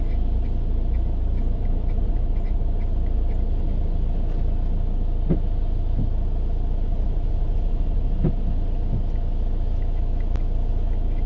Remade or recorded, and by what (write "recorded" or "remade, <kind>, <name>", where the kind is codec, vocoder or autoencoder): recorded